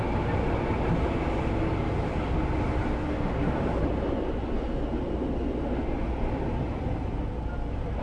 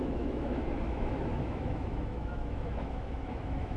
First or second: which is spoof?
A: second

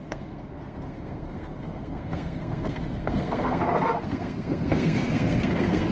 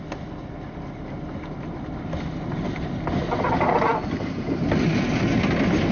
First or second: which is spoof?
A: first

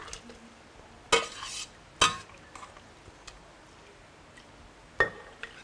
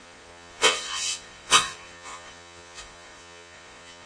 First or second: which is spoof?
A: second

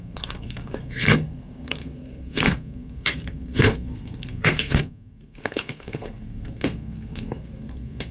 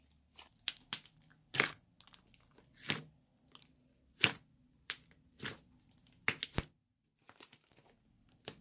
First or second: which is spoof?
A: first